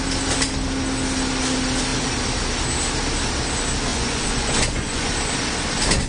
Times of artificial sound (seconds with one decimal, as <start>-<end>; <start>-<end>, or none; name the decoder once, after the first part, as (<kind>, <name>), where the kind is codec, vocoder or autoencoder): 3.9-5.1 (vocoder, Vocos)